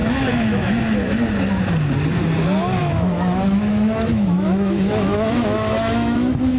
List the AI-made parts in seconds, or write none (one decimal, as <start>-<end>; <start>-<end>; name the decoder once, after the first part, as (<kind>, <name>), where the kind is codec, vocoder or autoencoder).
0.0-0.8 (autoencoder, DAC-VAE); 2.8-6.6